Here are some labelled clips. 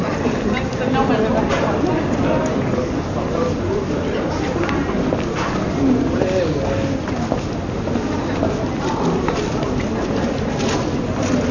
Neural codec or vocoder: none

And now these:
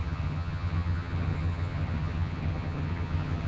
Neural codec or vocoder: vocoder, HiFi-GAN